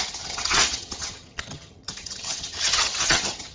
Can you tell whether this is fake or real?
fake